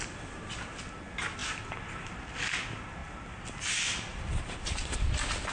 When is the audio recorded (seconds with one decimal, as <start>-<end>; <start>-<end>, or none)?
0.0-1.4; 2.5-4.1